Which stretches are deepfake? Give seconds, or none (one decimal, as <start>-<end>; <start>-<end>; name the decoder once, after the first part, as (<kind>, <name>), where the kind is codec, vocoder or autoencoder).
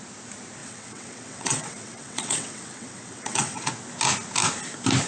0.6-3.7 (vocoder, WaveNeXt)